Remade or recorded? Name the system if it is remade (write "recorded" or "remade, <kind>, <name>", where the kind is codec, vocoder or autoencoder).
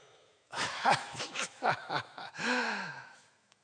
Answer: remade, autoencoder, DAC-VAE